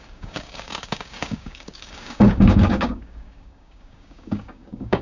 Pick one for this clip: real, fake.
fake